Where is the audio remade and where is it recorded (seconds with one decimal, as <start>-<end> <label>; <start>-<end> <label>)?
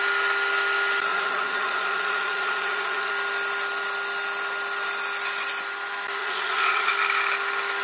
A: 0.0-1.1 recorded; 1.1-3.1 remade; 3.1-6.2 recorded; 6.2-6.9 remade; 6.9-7.8 recorded